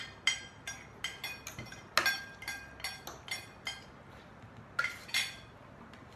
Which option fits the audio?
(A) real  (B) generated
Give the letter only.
A